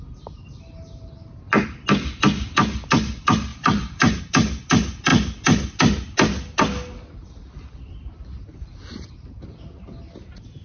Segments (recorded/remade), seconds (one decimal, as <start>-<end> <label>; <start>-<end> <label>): 0.0-3.5 recorded; 3.5-4.2 remade; 4.2-10.6 recorded